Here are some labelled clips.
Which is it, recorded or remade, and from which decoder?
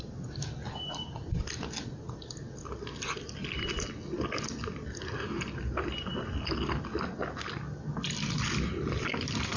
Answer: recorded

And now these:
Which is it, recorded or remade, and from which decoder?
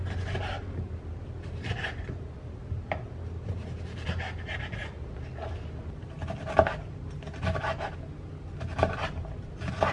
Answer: recorded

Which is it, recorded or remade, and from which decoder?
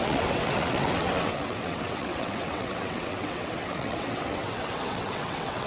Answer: remade, vocoder, WaveNeXt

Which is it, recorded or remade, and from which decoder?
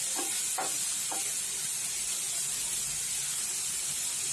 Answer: recorded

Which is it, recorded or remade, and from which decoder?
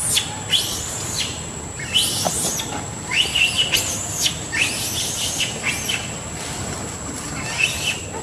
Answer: recorded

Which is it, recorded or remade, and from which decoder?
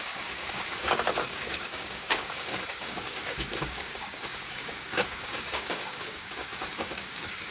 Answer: remade, codec, DAC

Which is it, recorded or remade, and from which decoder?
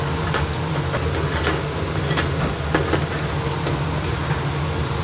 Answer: recorded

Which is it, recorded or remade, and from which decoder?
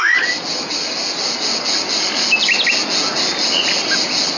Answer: recorded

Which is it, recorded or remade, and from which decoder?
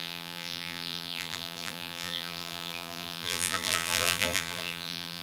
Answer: remade, vocoder, BigVGAN v2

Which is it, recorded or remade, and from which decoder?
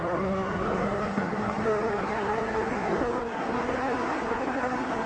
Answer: remade, codec, SNAC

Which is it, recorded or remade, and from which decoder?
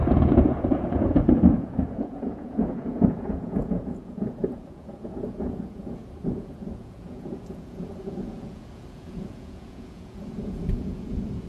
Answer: remade, vocoder, Vocos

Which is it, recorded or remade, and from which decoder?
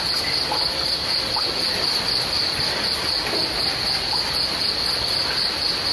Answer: recorded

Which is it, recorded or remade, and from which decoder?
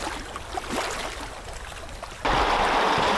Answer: recorded